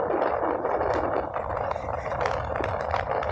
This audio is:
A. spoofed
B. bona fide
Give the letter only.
B